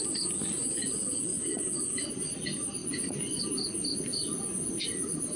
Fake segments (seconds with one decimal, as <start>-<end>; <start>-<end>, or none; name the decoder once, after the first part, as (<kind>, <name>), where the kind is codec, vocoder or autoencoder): 1.3-2.1 (vocoder, Vocos); 2.8-3.4; 4.1-5.4